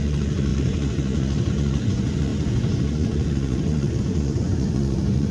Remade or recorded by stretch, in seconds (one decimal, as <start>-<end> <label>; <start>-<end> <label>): 0.0-5.3 remade